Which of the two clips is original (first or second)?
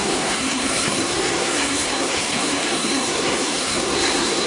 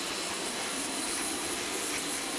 second